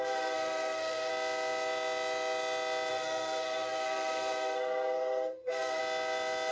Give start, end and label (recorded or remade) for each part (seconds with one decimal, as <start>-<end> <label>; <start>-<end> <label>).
0.0-1.1 remade; 1.1-2.9 recorded; 2.9-5.8 remade; 5.8-6.5 recorded